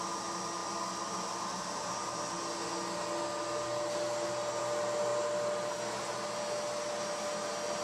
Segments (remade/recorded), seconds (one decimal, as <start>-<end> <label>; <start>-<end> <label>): 0.0-7.8 recorded